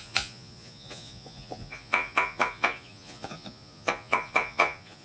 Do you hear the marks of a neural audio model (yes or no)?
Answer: yes